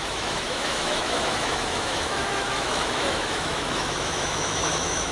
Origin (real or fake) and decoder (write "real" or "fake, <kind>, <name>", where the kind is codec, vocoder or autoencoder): fake, autoencoder, DAC-VAE